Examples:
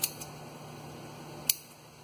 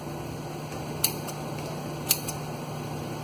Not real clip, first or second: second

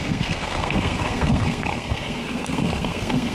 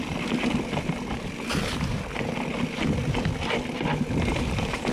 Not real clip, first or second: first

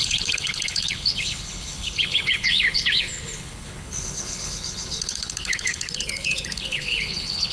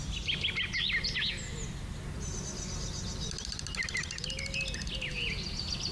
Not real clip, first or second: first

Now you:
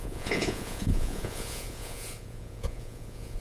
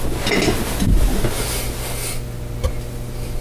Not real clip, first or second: first